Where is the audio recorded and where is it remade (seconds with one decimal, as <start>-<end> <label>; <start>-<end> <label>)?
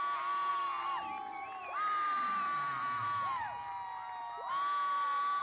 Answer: 0.0-5.4 recorded